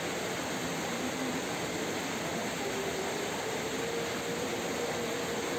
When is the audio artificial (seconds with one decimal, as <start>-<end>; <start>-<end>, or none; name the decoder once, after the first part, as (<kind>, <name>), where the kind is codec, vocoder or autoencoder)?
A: 0.6-3.8 (vocoder, BigVGAN v2)